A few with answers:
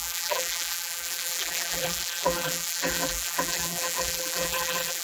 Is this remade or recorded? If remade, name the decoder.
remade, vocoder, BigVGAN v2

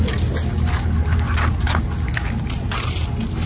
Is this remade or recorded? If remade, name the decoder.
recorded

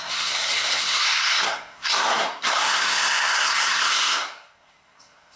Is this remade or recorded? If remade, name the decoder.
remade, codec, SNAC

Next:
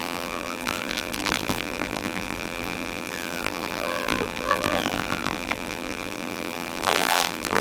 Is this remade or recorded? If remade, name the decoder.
remade, vocoder, BigVGAN v2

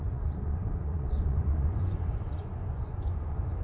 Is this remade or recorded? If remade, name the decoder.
remade, vocoder, Vocos